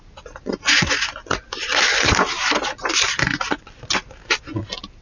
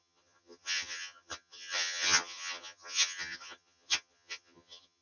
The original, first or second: first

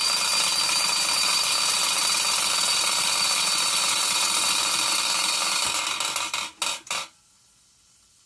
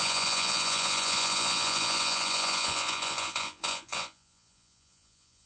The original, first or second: first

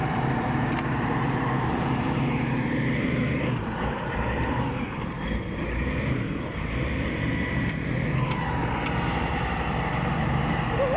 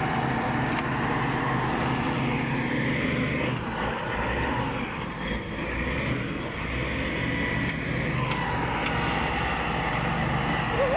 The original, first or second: second